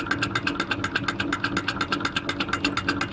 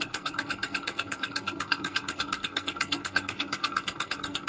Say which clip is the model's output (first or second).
second